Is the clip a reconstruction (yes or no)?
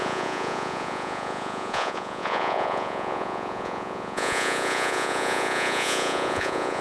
yes